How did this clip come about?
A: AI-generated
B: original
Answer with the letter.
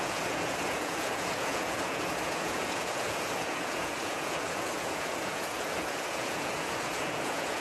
A